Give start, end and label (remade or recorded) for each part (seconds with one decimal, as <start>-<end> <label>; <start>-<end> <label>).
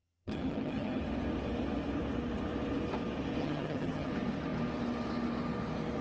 0.0-1.0 remade; 1.0-3.4 recorded; 3.4-4.1 remade; 4.1-6.0 recorded